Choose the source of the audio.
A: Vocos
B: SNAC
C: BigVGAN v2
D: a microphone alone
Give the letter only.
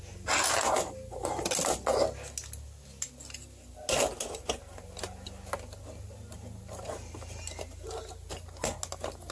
D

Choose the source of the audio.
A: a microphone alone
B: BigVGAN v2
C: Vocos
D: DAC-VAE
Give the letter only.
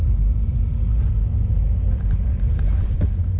A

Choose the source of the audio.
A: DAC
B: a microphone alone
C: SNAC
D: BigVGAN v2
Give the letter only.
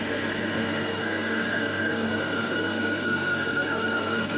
C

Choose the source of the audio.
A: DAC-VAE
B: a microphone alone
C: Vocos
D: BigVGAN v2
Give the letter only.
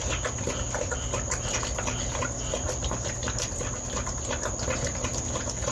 B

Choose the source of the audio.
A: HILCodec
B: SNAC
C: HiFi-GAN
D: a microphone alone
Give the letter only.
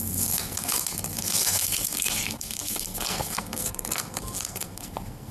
B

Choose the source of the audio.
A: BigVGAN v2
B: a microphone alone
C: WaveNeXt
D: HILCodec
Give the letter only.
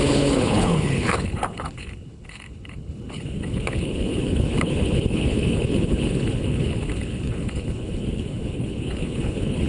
D